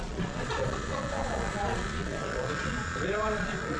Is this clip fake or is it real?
fake